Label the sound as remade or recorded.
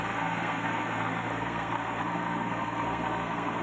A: remade